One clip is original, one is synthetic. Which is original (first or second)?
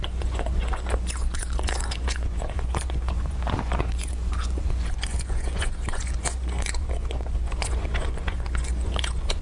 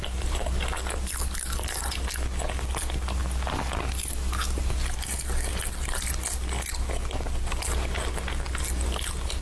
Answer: second